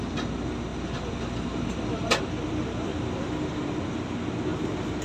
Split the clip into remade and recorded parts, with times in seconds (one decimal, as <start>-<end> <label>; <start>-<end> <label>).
0.0-0.7 recorded; 0.7-3.7 remade; 3.7-5.0 recorded